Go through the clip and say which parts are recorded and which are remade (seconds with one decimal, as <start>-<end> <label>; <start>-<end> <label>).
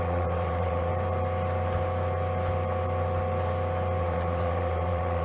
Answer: 0.0-0.9 remade; 0.9-4.0 recorded; 4.0-5.2 remade